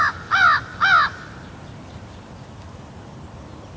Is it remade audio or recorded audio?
recorded